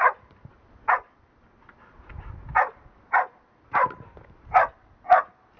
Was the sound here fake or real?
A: real